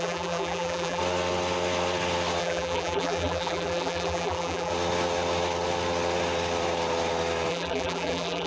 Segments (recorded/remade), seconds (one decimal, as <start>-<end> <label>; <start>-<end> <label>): 0.0-1.0 remade; 1.0-2.4 recorded; 2.4-4.7 remade; 4.7-7.5 recorded; 7.5-8.5 remade